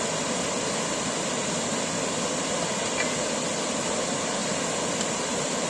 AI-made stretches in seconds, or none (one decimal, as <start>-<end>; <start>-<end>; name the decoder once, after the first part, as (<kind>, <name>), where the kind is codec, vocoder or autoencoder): none